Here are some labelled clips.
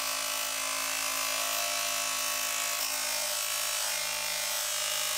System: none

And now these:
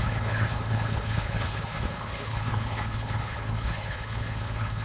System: codec, HILCodec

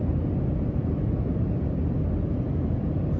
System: none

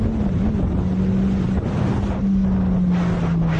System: none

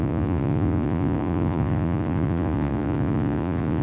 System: vocoder, Vocos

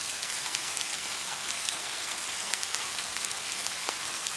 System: codec, SNAC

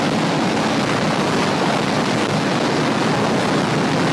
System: none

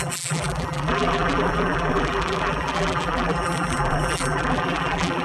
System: vocoder, BigVGAN v2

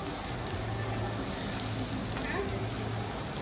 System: none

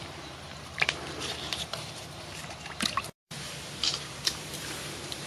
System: vocoder, BigVGAN v2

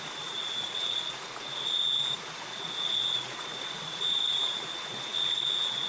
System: vocoder, Vocos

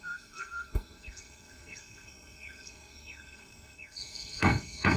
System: codec, SNAC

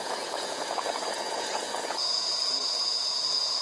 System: vocoder, Vocos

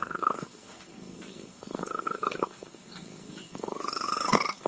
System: codec, SNAC